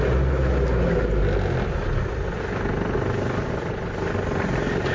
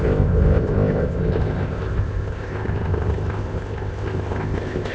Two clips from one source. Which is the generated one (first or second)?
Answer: second